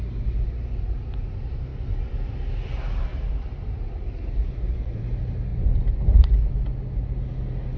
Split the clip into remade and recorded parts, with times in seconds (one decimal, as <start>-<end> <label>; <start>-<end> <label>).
0.0-3.1 recorded; 3.1-5.0 remade; 5.0-5.5 recorded; 5.5-6.5 remade; 6.5-7.8 recorded